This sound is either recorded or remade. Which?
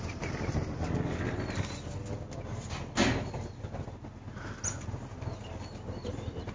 recorded